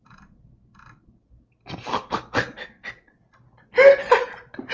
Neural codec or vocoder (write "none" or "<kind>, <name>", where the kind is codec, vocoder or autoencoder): none